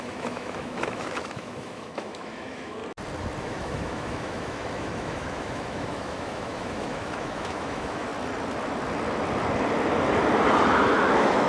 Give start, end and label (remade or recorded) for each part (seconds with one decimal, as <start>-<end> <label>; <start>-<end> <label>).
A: 0.0-2.8 remade; 2.8-3.4 recorded; 3.4-8.1 remade; 8.1-11.1 recorded; 11.1-11.5 remade